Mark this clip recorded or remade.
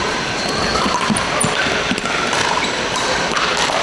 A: remade